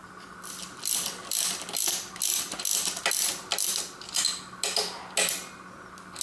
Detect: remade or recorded recorded